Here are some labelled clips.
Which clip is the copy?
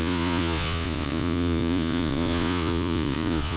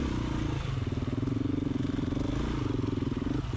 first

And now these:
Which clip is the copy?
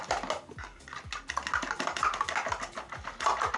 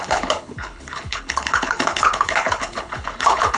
second